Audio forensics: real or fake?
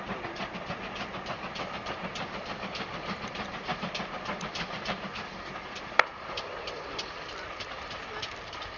fake